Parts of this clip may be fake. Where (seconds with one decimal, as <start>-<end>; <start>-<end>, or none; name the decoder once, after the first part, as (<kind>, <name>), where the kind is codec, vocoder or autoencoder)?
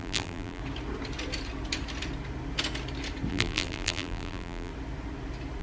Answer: 0.0-0.6 (vocoder, BigVGAN v2); 3.3-4.7